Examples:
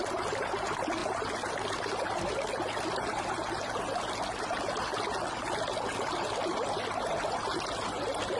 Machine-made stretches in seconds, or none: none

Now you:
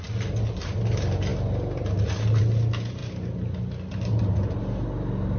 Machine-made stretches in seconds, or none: none